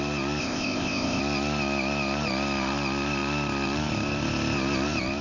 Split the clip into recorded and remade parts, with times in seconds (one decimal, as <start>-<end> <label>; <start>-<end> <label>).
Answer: 0.0-0.4 recorded; 0.4-1.2 remade; 1.2-5.2 recorded